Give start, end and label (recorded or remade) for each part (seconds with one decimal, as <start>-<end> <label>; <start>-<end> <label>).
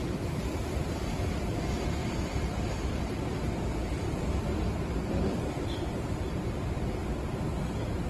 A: 0.0-1.6 remade; 1.6-2.0 recorded; 2.0-6.9 remade; 6.9-8.1 recorded